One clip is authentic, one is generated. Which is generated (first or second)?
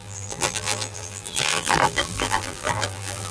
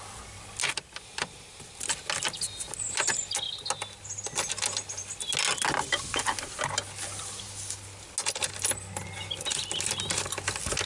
first